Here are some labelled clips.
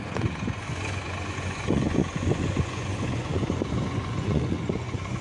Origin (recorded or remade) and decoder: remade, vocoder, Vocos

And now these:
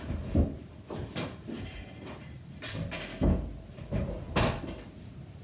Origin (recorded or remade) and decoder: recorded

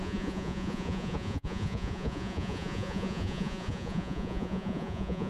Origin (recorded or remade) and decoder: remade, vocoder, Vocos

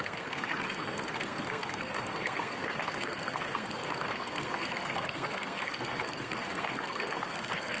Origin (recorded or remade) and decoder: remade, codec, SNAC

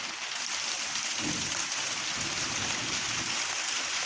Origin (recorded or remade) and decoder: recorded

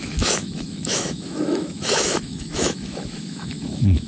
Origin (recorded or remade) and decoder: remade, autoencoder, DAC-VAE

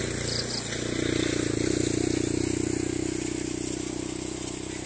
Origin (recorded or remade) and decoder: recorded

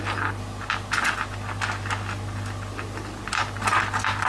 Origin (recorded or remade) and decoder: recorded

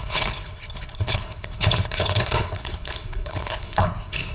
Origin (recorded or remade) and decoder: remade, codec, HILCodec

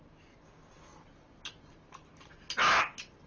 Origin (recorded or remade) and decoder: recorded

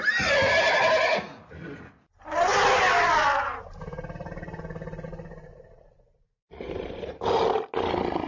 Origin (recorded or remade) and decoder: recorded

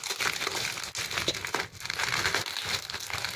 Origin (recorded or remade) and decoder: recorded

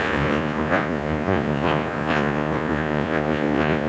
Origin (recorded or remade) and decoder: remade, vocoder, Vocos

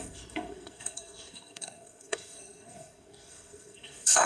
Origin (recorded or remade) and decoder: remade, codec, SNAC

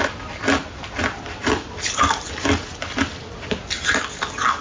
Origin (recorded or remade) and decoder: remade, vocoder, BigVGAN v2